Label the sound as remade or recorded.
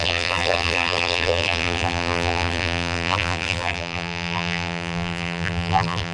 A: remade